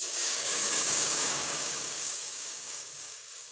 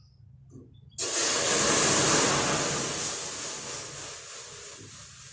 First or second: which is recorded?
second